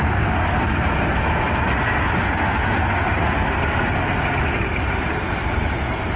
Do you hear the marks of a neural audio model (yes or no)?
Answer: no